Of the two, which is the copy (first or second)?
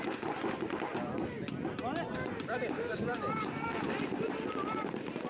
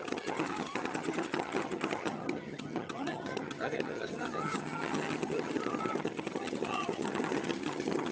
second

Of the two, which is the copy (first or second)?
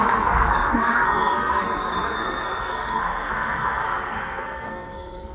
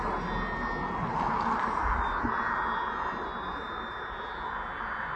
first